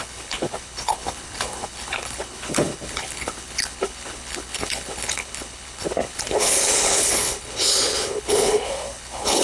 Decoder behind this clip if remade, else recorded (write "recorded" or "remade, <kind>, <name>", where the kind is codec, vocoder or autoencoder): remade, codec, HILCodec